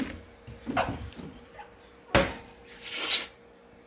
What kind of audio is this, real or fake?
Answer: real